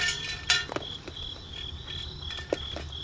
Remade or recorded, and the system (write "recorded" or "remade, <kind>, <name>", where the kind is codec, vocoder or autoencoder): recorded